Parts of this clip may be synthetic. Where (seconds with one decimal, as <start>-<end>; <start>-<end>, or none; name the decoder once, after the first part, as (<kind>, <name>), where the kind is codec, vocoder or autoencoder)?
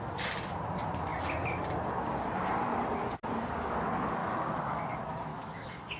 4.2-4.8 (autoencoder, DAC-VAE); 5.3-6.0